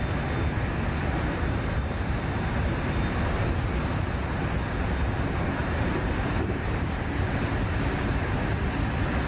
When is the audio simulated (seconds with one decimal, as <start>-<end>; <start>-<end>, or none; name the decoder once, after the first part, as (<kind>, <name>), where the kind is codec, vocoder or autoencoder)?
1.0-4.4 (vocoder, BigVGAN v2); 5.6-8.3